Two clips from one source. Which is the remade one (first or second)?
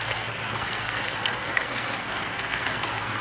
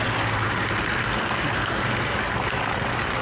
first